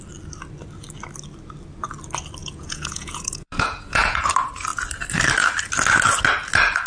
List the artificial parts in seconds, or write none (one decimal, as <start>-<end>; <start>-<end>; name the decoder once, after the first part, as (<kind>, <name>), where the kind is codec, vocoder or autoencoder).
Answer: 2.4-4.2 (vocoder, Vocos)